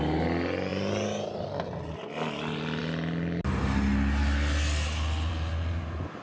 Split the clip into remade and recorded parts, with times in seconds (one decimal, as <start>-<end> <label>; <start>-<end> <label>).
0.0-0.7 recorded; 0.7-1.4 remade; 1.4-6.2 recorded